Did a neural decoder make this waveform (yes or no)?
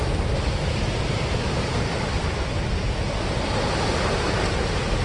no